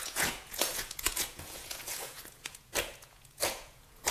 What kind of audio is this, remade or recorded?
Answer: remade